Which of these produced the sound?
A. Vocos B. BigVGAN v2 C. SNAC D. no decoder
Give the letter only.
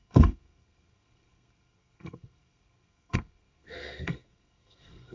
C